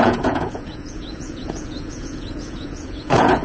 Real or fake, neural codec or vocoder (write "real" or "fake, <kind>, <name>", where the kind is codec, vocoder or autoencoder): fake, vocoder, Vocos